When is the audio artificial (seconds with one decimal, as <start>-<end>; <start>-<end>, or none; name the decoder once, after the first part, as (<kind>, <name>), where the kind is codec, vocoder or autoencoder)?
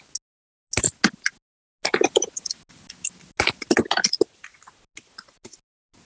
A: none